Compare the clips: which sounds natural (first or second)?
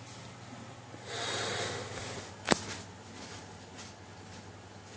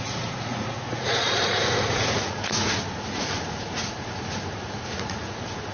first